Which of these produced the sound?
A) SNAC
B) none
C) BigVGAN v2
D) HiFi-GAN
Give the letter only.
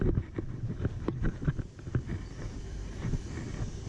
B